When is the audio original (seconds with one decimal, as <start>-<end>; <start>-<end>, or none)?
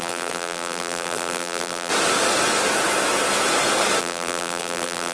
1.9-4.0